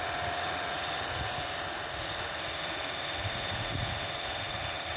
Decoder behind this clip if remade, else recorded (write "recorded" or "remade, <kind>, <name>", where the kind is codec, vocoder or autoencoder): remade, vocoder, Vocos